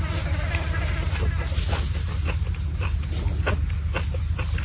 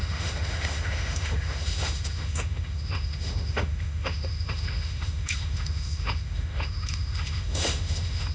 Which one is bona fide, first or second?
first